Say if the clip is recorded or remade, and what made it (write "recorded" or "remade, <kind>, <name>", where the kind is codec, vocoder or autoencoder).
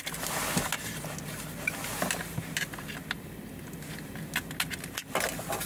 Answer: recorded